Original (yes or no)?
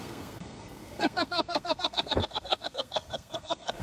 no